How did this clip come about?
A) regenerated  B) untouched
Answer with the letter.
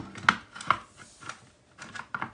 B